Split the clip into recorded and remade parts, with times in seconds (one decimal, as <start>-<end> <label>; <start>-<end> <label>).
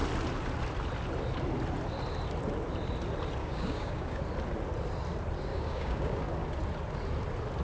0.0-3.4 recorded; 3.4-4.2 remade; 4.2-5.5 recorded; 5.5-6.2 remade; 6.2-7.6 recorded